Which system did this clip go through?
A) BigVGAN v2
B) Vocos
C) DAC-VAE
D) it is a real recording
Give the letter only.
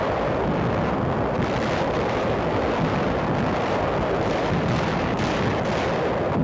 D